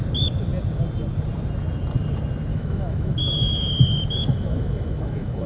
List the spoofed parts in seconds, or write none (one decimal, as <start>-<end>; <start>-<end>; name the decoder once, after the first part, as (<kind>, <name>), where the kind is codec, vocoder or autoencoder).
2.5-3.7 (autoencoder, DAC-VAE); 4.2-5.5

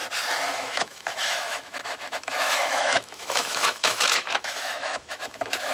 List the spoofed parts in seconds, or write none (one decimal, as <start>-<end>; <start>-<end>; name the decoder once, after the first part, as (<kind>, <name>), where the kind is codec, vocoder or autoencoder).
0.5-5.7 (autoencoder, DAC-VAE)